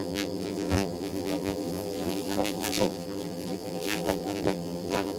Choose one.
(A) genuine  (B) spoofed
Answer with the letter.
B